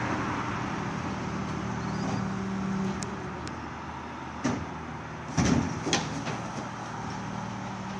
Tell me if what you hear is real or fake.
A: real